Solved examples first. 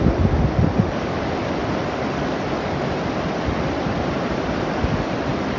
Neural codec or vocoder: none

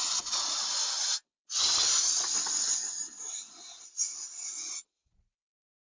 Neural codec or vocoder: none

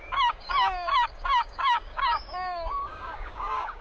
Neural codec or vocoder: codec, DAC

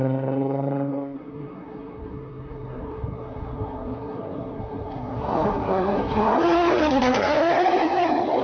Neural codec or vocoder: codec, SNAC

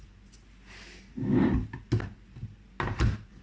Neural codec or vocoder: none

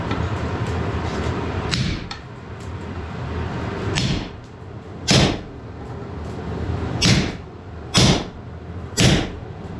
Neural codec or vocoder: vocoder, BigVGAN v2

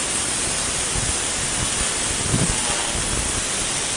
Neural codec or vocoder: none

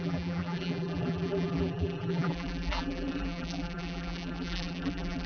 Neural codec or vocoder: vocoder, BigVGAN v2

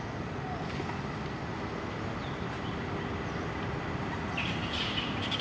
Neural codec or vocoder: none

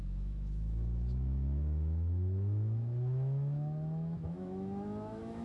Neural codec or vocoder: autoencoder, DAC-VAE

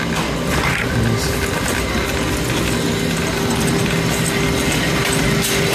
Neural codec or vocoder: none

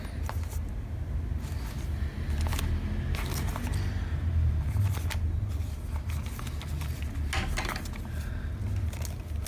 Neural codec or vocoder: none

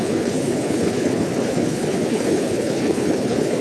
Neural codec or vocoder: codec, HILCodec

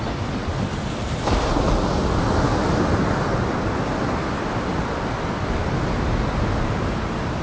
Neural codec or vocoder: none